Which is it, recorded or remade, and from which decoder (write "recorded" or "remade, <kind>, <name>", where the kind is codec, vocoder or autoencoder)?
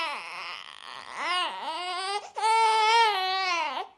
recorded